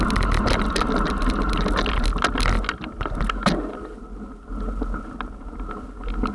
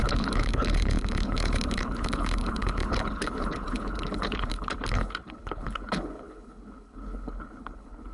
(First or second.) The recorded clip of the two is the first